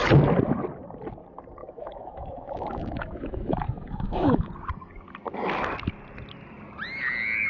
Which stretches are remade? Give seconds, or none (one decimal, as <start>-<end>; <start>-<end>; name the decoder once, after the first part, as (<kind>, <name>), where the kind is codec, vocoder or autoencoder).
1.6-4.5 (autoencoder, DAC-VAE)